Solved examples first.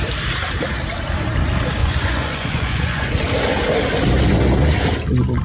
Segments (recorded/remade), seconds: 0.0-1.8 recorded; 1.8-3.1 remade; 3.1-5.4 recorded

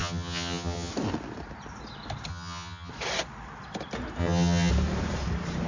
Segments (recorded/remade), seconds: 0.0-0.9 remade; 0.9-2.3 recorded; 2.3-2.9 remade; 2.9-4.2 recorded; 4.2-4.7 remade; 4.7-5.7 recorded

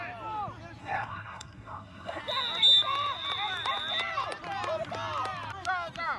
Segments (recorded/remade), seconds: 0.0-0.8 recorded; 0.8-2.2 remade; 2.2-6.2 recorded

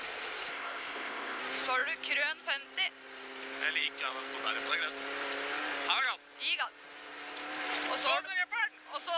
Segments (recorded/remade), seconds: 0.0-0.5 recorded; 0.5-1.4 remade; 1.4-9.2 recorded